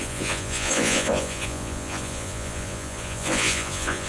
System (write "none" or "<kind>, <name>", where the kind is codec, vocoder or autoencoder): vocoder, Vocos